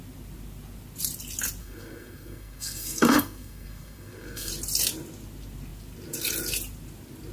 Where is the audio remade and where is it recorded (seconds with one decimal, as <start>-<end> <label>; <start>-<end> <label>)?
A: 0.0-1.6 recorded; 1.6-4.5 remade; 4.5-7.3 recorded